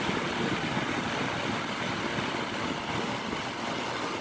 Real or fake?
real